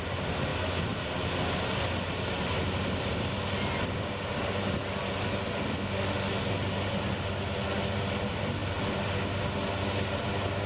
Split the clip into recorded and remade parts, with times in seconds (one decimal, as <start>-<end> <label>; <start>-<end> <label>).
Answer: 0.0-10.7 recorded